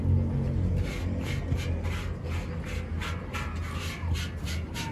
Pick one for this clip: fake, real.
real